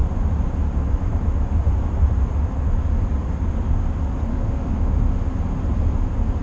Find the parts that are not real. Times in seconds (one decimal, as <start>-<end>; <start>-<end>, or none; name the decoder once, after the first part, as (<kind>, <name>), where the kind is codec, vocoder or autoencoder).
4.3-5.0 (autoencoder, DAC-VAE)